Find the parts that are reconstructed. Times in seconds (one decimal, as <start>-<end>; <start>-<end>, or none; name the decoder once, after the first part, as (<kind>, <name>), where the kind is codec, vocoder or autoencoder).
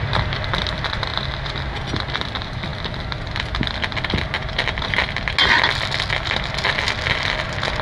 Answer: none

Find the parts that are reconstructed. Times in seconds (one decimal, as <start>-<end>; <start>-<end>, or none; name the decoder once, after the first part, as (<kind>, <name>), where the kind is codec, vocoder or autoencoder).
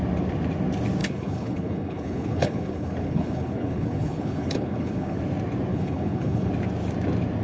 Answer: 1.0-5.2 (codec, HILCodec); 5.7-6.5